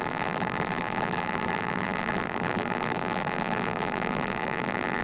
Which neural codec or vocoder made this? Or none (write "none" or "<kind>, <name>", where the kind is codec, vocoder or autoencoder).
vocoder, BigVGAN v2